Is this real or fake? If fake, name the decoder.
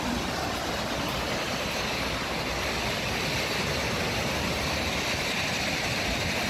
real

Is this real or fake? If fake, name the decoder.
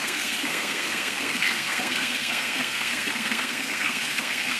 fake, codec, SNAC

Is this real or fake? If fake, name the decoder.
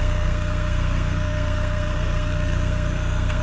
fake, codec, SNAC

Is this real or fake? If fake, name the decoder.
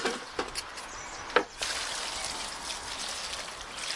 real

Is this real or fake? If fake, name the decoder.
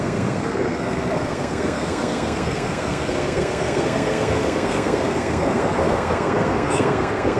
fake, codec, SNAC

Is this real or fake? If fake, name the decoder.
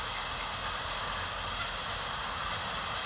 real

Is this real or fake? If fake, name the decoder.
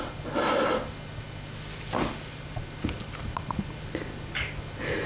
real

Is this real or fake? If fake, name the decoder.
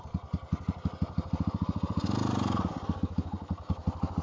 real